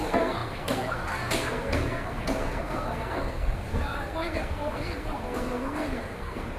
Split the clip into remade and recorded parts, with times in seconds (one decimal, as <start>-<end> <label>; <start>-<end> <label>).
0.0-6.6 remade